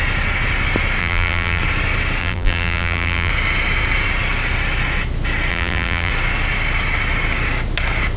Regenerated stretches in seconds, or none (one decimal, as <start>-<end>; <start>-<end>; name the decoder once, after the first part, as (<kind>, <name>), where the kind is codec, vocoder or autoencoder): 1.0-1.6 (vocoder, BigVGAN v2); 2.2-3.3; 5.5-6.1

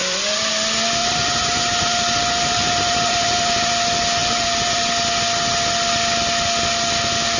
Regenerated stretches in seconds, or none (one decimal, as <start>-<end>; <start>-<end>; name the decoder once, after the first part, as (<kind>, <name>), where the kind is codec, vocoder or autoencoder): 0.0-0.5 (vocoder, BigVGAN v2); 1.0-3.7; 4.2-4.8

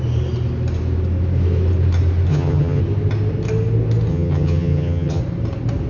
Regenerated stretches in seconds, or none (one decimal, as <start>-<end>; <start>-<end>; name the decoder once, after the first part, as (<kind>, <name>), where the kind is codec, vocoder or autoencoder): 2.3-2.8 (vocoder, HiFi-GAN); 4.1-5.2

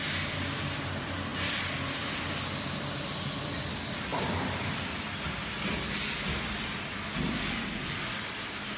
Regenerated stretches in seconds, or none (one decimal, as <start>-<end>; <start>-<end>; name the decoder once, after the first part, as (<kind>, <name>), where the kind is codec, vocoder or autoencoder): none

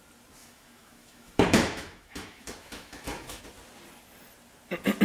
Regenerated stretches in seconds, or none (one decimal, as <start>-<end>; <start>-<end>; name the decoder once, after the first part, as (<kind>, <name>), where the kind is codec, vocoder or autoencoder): 0.4-3.4 (autoencoder, DAC-VAE)

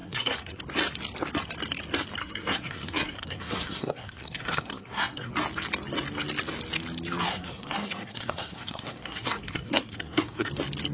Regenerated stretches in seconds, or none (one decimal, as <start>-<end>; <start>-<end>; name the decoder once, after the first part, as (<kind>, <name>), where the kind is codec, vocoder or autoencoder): 0.0-0.6 (codec, SNAC); 2.2-5.3; 7.3-10.5

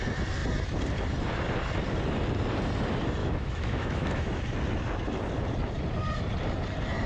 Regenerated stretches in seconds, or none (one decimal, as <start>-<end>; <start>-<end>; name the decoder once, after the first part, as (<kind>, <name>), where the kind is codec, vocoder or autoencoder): 3.2-4.4 (autoencoder, DAC-VAE)

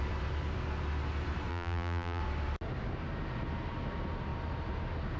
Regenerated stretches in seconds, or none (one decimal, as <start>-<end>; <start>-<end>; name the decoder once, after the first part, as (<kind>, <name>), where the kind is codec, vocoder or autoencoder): 1.5-2.2 (vocoder, BigVGAN v2)